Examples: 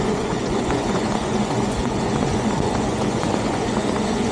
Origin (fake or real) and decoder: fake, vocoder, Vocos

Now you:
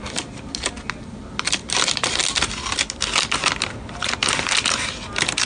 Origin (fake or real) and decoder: real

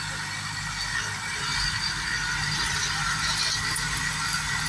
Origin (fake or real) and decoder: real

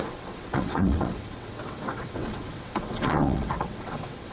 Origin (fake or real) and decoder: fake, vocoder, WaveNeXt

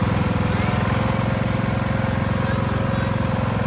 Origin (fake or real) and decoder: real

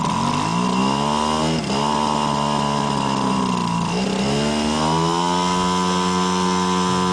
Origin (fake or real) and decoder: real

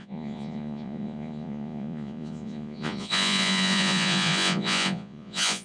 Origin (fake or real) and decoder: fake, vocoder, Vocos